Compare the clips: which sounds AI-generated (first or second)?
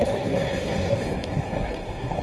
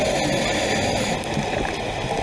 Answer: first